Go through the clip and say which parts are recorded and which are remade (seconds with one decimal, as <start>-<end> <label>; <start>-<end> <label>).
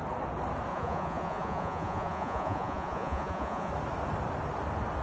0.0-0.7 recorded; 0.7-3.7 remade; 3.7-5.0 recorded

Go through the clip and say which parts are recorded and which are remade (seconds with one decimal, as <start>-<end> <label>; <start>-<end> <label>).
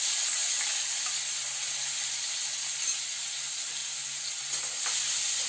0.0-5.5 recorded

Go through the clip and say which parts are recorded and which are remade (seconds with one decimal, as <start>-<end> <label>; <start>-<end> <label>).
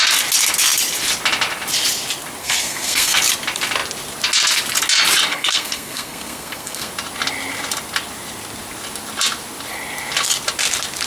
0.0-2.4 recorded; 2.4-3.2 remade; 3.2-5.3 recorded; 5.3-6.9 remade; 6.9-11.1 recorded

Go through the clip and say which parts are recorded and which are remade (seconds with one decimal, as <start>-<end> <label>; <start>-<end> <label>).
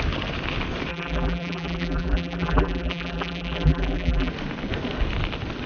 0.0-0.9 recorded; 0.9-4.3 remade; 4.3-5.7 recorded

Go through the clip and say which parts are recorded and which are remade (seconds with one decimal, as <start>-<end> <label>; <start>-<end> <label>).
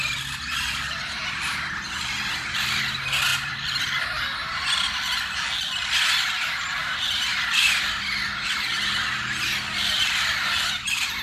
0.0-3.3 recorded; 3.3-4.0 remade; 4.0-9.2 recorded; 9.2-11.2 remade